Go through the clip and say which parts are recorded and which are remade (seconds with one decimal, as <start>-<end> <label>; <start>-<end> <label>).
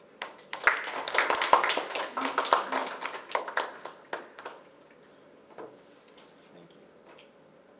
0.0-7.8 recorded